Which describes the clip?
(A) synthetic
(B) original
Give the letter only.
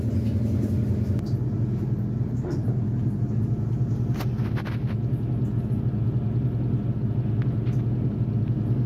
B